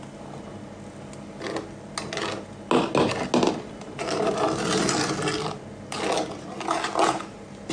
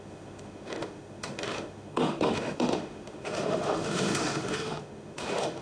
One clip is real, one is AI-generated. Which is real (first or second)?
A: first